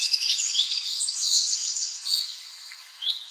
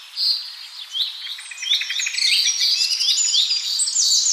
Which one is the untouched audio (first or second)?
second